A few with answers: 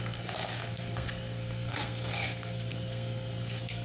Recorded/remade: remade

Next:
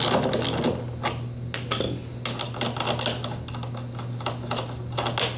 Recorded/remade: recorded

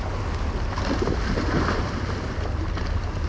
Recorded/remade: recorded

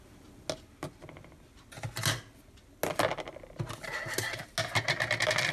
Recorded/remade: recorded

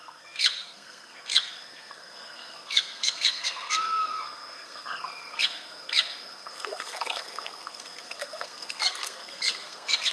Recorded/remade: remade